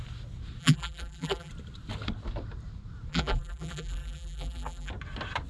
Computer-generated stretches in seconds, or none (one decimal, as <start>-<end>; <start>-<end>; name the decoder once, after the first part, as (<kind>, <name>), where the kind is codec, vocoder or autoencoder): 0.6-1.5 (vocoder, BigVGAN v2); 3.1-4.9

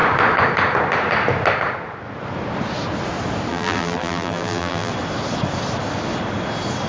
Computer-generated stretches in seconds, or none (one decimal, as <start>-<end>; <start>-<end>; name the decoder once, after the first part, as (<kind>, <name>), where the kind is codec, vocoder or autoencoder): 3.5-4.9 (vocoder, BigVGAN v2)

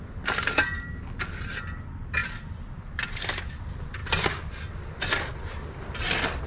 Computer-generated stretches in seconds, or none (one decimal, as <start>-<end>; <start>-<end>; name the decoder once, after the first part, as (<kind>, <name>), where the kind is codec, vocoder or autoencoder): 2.2-3.6 (vocoder, BigVGAN v2)

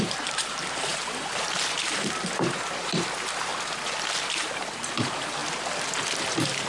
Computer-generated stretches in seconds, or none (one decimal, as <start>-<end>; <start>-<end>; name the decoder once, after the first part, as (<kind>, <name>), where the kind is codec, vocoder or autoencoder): 0.0-3.5 (vocoder, BigVGAN v2); 4.2-5.4

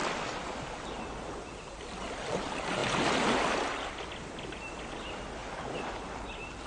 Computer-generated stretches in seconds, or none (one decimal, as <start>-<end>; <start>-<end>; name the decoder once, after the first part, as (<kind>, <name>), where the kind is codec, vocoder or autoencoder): 1.9-2.8 (vocoder, BigVGAN v2); 5.0-5.4